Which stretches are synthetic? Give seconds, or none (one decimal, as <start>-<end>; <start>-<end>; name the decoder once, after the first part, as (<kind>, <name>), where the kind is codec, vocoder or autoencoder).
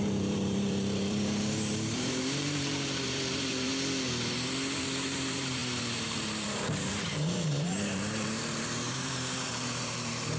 0.0-3.7 (vocoder, BigVGAN v2); 4.8-10.4